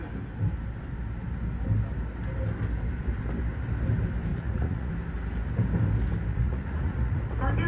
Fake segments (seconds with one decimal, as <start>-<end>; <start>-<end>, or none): 4.3-4.9; 6.3-7.2